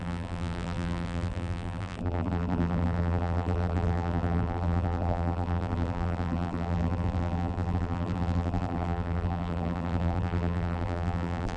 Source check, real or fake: fake